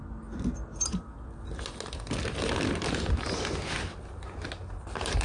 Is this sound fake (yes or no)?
no